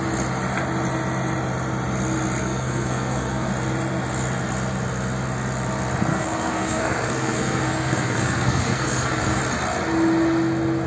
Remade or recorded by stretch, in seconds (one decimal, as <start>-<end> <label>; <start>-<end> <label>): 0.0-2.4 recorded; 2.4-3.5 remade; 3.5-6.1 recorded; 6.1-9.4 remade; 9.4-10.9 recorded